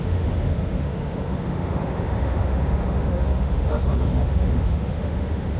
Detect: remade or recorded remade